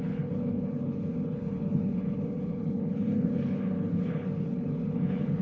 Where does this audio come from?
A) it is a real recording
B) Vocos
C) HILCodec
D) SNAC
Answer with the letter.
C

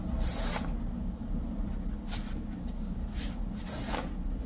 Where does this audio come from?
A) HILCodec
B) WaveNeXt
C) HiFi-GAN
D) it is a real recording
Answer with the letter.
D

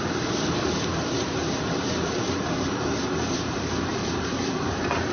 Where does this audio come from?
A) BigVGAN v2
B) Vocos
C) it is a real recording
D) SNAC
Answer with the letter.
A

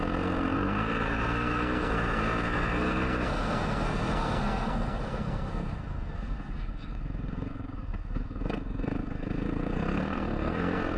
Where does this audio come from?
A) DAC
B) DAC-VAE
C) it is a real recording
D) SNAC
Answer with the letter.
D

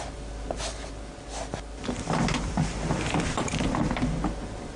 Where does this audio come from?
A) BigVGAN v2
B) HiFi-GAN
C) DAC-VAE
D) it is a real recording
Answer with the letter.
D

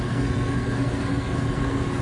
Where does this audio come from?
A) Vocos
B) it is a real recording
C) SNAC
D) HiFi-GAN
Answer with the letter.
C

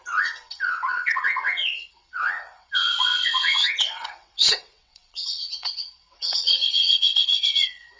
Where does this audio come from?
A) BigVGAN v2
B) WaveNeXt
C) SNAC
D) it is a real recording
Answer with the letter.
B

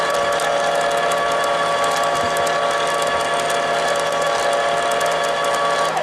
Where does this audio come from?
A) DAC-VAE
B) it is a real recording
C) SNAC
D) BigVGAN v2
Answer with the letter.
B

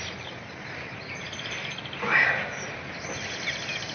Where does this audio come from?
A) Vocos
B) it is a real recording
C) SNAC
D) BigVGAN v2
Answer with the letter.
D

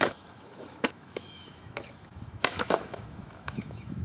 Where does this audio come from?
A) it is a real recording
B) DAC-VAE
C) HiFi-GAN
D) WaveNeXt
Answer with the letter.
B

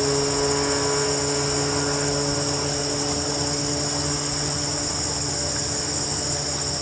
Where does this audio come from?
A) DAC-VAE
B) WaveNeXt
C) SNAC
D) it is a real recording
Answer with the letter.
D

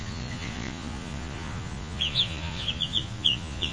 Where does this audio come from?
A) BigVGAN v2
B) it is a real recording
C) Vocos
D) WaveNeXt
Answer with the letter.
C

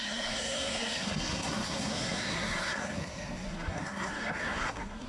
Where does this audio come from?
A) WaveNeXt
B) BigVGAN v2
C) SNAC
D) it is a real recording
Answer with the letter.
C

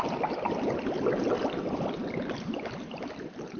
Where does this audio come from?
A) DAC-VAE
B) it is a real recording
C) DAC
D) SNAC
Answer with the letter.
B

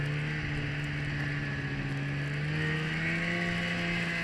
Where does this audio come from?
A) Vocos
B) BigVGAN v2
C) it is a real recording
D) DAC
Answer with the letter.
C